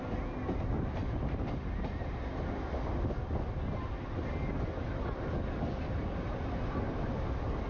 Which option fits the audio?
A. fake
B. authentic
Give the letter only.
B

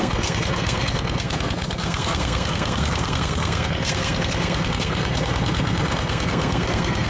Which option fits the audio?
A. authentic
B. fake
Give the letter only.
B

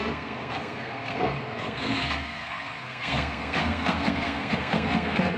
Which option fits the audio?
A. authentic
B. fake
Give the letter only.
B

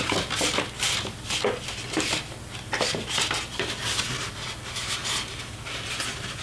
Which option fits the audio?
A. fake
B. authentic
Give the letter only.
B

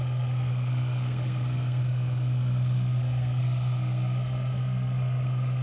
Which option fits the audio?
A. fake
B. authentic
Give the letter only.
A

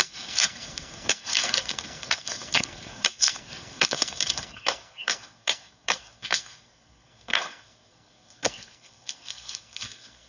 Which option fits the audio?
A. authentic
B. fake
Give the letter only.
B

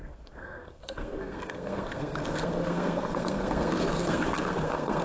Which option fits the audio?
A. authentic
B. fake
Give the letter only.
B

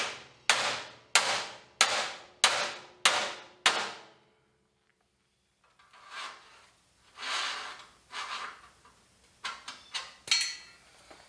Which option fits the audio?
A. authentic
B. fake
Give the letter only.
A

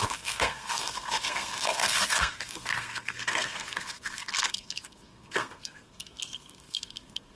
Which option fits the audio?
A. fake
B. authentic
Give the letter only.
A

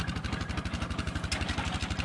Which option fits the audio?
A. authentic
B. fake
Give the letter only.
A